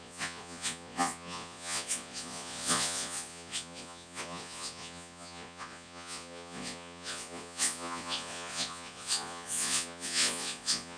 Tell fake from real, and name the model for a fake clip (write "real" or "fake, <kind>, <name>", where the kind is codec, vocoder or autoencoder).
fake, vocoder, Vocos